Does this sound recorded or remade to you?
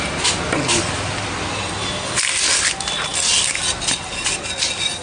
recorded